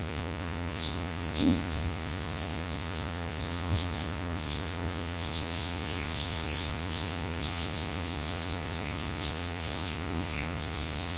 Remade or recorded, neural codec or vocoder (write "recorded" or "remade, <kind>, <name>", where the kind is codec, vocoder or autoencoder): remade, vocoder, Vocos